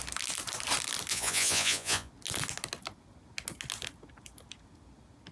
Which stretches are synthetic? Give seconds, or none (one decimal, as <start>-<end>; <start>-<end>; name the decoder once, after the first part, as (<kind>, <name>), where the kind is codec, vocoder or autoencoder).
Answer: 1.1-2.1 (vocoder, Vocos)